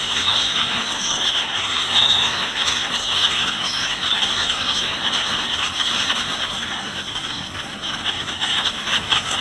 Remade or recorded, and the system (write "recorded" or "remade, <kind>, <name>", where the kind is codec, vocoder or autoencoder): remade, codec, SNAC